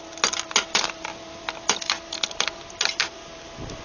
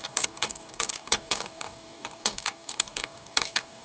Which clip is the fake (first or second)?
second